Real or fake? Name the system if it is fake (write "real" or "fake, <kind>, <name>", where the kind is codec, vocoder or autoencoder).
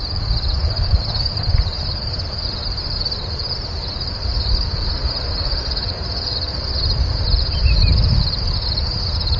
fake, vocoder, BigVGAN v2